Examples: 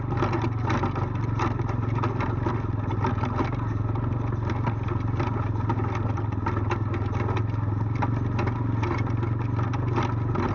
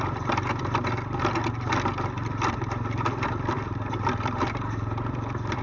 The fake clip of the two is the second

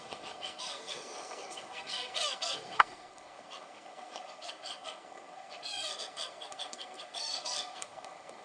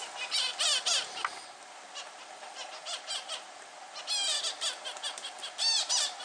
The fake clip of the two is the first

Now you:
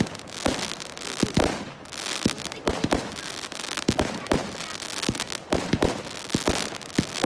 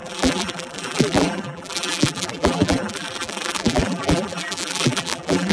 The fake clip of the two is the second